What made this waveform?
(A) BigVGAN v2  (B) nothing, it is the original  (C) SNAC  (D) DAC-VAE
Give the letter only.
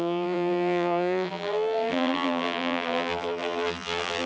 A